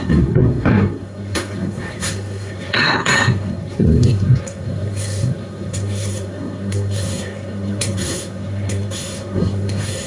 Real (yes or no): no